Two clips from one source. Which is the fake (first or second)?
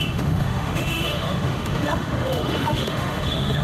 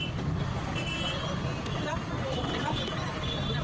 first